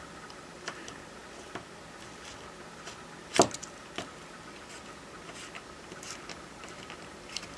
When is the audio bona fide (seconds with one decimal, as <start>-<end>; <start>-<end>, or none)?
1.2-5.8